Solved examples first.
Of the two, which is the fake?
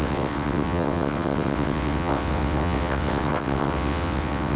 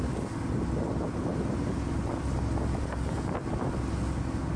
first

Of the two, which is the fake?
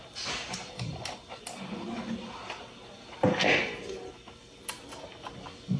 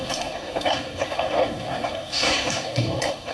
second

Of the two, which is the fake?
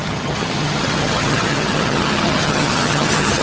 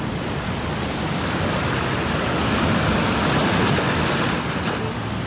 first